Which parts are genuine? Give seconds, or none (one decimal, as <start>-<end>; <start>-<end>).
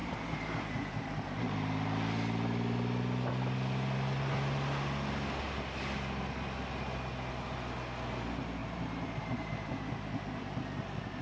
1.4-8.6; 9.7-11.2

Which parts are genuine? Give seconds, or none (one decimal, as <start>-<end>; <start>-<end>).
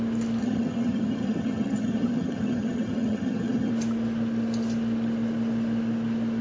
0.0-0.4; 3.7-6.4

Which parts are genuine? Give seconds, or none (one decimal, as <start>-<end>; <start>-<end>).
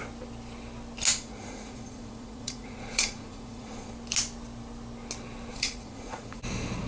0.0-1.1; 3.9-5.5; 6.4-6.9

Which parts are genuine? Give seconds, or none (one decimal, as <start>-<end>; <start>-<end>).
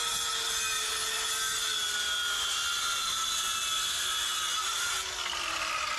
0.0-5.0